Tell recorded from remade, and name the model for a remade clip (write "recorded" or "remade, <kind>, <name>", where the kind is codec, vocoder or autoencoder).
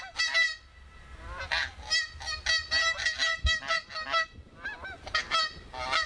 recorded